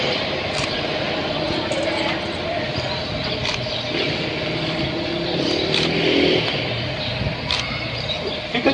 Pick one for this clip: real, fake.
real